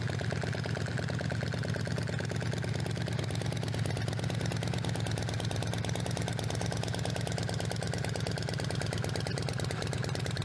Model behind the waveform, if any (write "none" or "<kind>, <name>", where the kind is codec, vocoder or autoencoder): none